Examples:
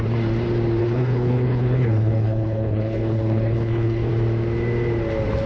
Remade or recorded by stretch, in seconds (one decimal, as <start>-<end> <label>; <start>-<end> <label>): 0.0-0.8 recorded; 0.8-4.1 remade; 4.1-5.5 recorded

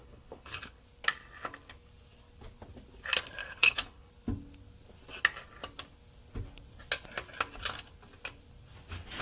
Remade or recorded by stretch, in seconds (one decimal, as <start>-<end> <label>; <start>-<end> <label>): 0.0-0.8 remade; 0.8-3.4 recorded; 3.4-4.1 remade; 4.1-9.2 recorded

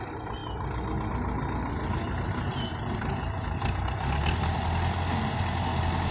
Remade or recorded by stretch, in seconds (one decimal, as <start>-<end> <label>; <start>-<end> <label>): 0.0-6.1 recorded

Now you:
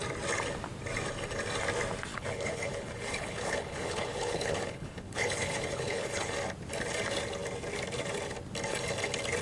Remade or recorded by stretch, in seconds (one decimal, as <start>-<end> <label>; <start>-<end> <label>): 0.0-2.1 recorded; 2.1-6.3 remade; 6.3-9.4 recorded

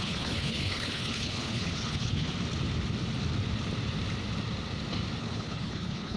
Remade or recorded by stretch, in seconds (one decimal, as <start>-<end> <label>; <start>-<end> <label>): 0.0-2.3 remade; 2.3-5.2 recorded; 5.2-6.2 remade

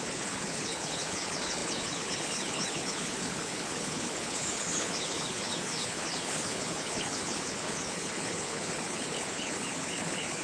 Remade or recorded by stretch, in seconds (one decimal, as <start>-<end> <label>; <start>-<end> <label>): 0.0-10.4 remade

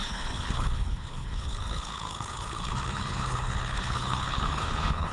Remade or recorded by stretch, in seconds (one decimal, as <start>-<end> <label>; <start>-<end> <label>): 0.0-5.1 remade